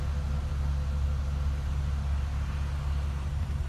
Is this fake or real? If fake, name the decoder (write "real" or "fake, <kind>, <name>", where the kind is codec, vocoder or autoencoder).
real